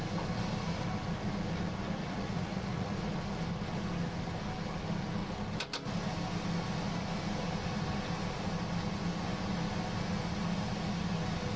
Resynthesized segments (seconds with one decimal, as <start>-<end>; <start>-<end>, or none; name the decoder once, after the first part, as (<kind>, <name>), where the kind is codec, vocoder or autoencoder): 2.0-3.1 (vocoder, Vocos)